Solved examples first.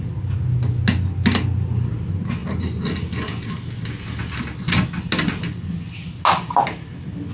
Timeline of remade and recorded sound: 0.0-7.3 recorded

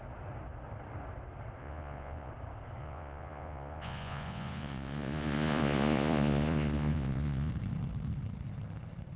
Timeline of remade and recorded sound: 0.0-1.6 recorded; 1.6-2.3 remade; 2.3-2.8 recorded; 2.8-7.5 remade; 7.5-9.2 recorded

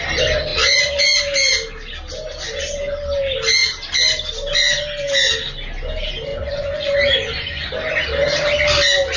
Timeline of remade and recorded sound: 0.0-6.3 recorded; 6.3-7.7 remade; 7.7-9.2 recorded

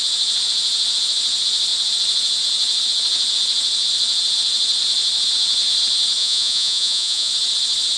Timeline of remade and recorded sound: 0.0-6.2 recorded; 6.2-7.3 remade; 7.3-8.0 recorded

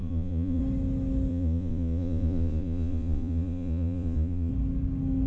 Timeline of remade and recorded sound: 0.0-0.6 remade; 0.6-1.3 recorded; 1.3-4.5 remade; 4.5-5.3 recorded

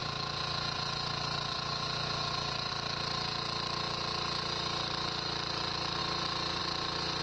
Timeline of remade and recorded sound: 0.0-2.7 remade; 2.7-7.2 recorded

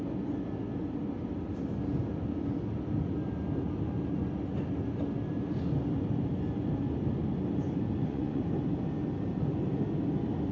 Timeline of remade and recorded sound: 0.0-7.9 recorded; 7.9-8.4 remade; 8.4-10.5 recorded

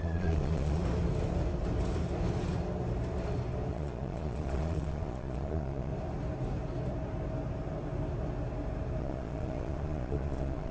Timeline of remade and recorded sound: 0.0-0.8 remade; 0.8-3.7 recorded; 3.7-5.9 remade; 5.9-9.0 recorded; 9.0-10.7 remade